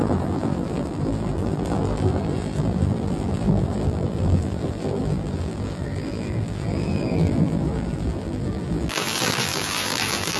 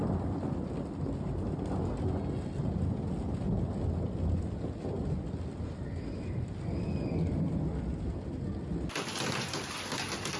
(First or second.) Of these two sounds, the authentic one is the second